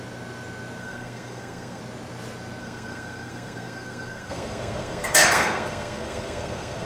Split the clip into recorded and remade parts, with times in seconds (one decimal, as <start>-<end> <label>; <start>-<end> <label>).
0.0-0.8 recorded; 0.8-1.8 remade; 1.8-2.6 recorded; 2.6-6.9 remade